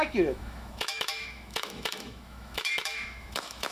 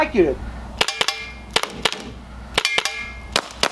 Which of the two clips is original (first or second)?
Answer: second